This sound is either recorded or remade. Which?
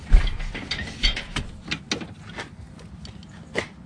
recorded